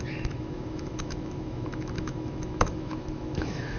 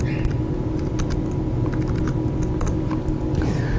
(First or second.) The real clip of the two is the second